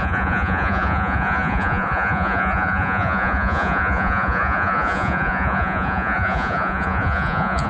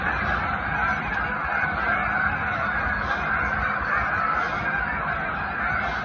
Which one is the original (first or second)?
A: second